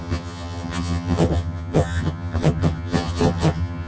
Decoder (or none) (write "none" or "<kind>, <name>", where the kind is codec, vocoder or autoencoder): vocoder, HiFi-GAN